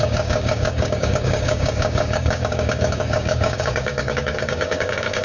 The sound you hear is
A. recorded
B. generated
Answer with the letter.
B